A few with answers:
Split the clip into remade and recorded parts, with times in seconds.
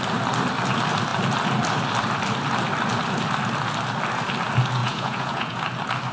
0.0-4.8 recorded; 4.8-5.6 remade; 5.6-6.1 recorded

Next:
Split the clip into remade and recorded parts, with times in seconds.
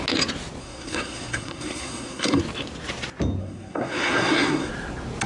0.0-0.6 recorded; 0.6-2.4 remade; 2.4-3.4 recorded; 3.4-4.7 remade; 4.7-5.3 recorded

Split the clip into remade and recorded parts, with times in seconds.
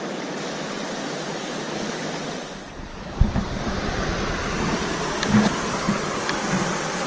0.0-1.3 recorded; 1.3-1.9 remade; 1.9-2.9 recorded; 2.9-3.6 remade; 3.6-7.1 recorded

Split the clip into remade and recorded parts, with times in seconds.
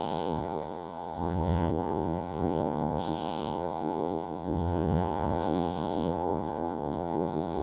0.0-7.6 remade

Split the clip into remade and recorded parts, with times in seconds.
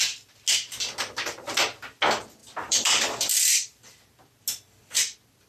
0.0-2.4 recorded; 2.4-3.8 remade; 3.8-5.5 recorded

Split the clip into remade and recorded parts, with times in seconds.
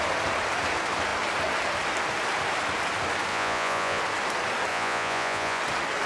0.0-3.3 recorded; 3.3-4.0 remade; 4.0-4.7 recorded; 4.7-5.6 remade; 5.6-6.1 recorded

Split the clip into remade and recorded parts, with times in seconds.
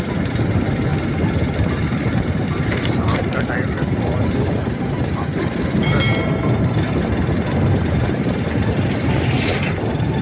0.0-0.9 remade; 0.9-1.7 recorded; 1.7-10.2 remade